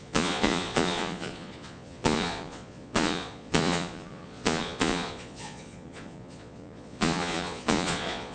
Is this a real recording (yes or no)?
no